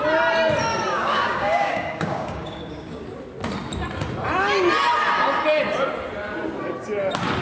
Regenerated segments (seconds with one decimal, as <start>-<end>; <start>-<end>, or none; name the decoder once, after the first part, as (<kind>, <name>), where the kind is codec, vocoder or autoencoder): 0.7-3.0 (codec, DAC)